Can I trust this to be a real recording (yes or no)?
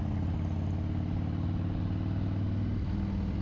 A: yes